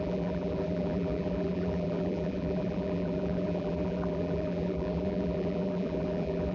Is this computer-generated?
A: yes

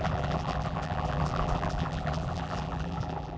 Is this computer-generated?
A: yes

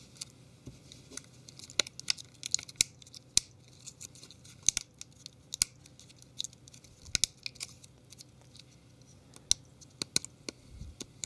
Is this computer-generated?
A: no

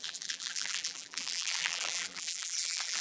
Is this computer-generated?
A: yes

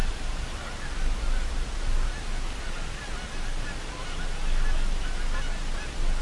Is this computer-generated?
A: no